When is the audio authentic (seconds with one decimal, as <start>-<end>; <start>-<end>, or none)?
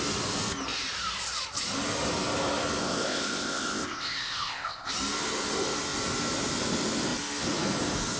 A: 0.0-2.8; 4.9-8.2